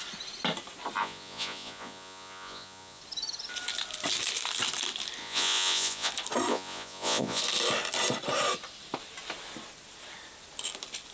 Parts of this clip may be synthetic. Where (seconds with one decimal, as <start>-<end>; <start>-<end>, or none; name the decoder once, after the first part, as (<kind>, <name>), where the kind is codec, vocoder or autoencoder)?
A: 1.0-3.0 (vocoder, Vocos); 5.2-6.1; 6.5-7.4